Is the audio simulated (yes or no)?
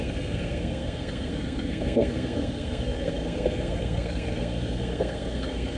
yes